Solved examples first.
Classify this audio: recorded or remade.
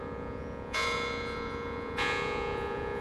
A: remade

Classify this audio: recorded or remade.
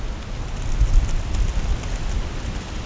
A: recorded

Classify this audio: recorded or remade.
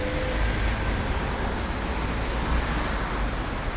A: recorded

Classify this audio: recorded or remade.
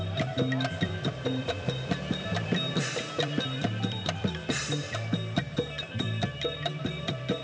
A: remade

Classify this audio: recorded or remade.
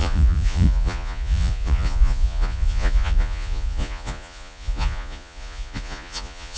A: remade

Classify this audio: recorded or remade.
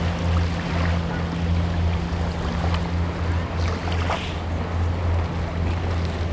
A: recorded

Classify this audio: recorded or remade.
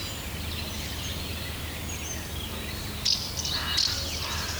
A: recorded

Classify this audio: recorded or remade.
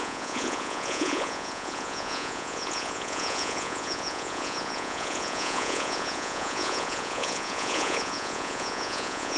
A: remade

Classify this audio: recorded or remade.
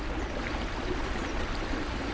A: recorded